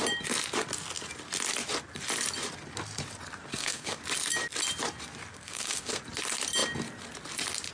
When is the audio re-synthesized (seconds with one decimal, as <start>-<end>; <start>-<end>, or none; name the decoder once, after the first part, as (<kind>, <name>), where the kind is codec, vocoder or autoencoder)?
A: 3.5-4.0 (codec, SNAC); 5.3-6.0